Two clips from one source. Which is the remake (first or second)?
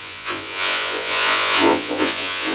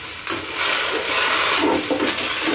first